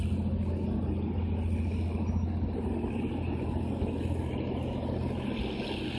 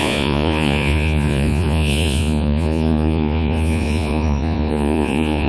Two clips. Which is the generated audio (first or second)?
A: second